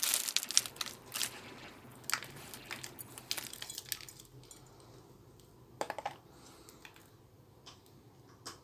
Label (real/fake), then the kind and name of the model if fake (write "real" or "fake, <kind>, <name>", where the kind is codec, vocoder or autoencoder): real